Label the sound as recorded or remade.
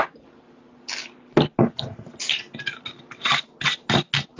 recorded